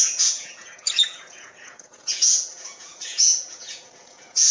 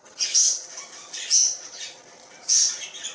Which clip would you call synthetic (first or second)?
first